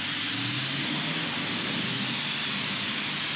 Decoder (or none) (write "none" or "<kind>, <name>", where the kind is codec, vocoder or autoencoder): none